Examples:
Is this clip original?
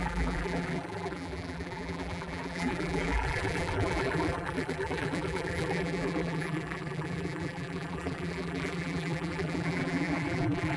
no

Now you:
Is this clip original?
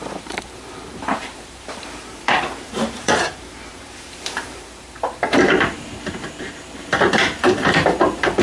no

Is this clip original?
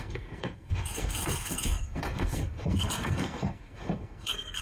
no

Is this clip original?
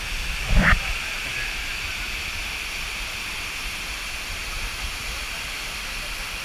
yes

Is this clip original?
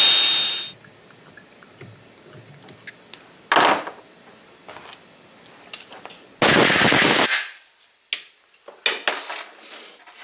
yes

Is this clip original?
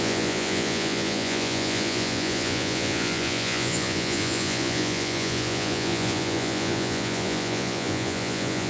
no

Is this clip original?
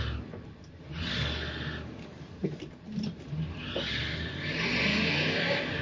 yes